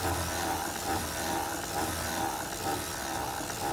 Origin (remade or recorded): recorded